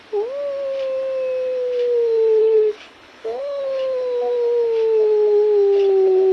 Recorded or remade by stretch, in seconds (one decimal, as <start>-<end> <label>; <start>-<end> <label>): 0.0-2.4 recorded; 2.4-3.6 remade; 3.6-6.3 recorded